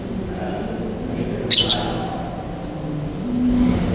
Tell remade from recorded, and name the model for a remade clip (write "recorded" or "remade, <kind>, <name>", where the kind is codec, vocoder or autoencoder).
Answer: recorded